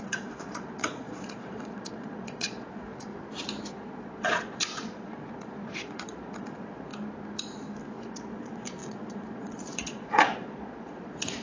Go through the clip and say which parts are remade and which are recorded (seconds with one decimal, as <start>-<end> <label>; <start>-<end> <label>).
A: 0.0-3.1 remade; 3.1-3.7 recorded; 3.7-6.9 remade; 6.9-7.9 recorded; 7.9-11.4 remade